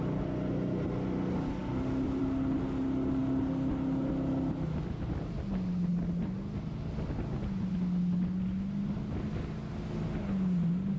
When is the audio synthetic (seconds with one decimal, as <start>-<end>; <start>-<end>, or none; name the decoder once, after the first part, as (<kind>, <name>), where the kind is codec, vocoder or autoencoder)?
none

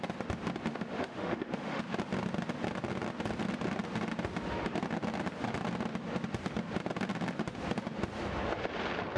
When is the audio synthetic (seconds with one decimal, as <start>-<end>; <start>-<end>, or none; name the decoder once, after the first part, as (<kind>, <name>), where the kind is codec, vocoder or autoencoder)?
0.7-1.8 (autoencoder, DAC-VAE)

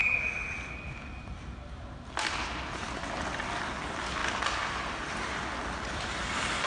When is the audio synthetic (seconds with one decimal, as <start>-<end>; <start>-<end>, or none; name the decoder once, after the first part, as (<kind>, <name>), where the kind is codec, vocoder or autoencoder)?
none